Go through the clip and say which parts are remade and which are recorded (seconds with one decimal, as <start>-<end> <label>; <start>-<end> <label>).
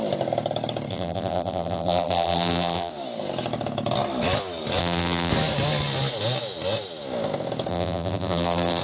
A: 0.0-0.9 recorded; 0.9-2.9 remade; 2.9-4.8 recorded; 4.8-5.3 remade; 5.3-7.7 recorded; 7.7-8.8 remade